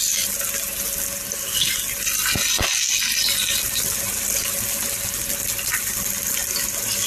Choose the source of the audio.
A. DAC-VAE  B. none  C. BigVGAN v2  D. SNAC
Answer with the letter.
B